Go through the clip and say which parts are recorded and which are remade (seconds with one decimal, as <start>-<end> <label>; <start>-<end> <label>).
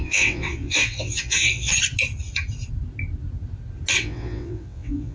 0.0-1.7 remade; 1.7-4.0 recorded; 4.0-5.1 remade